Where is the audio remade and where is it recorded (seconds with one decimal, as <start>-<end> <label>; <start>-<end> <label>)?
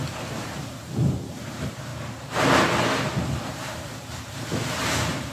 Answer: 0.0-1.9 remade; 1.9-3.5 recorded; 3.5-5.3 remade